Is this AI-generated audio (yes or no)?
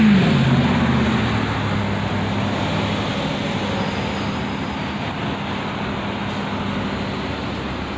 no